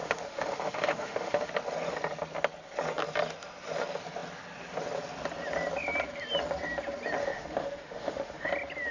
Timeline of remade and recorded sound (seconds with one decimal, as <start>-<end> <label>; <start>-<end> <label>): 0.0-1.5 remade; 1.5-7.2 recorded; 7.2-8.5 remade; 8.5-8.9 recorded